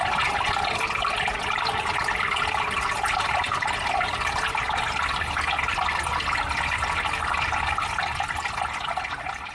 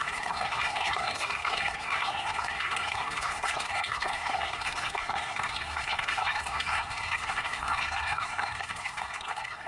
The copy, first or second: second